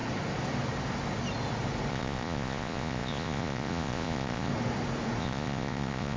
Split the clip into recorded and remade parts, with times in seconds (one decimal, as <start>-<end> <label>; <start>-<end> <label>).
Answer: 0.0-1.9 recorded; 1.9-4.5 remade; 4.5-5.2 recorded; 5.2-6.2 remade